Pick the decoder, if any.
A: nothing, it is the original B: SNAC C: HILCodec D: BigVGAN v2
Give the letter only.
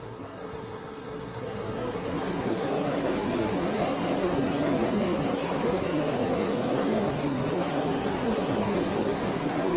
B